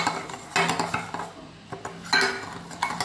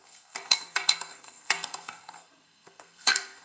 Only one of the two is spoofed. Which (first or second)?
second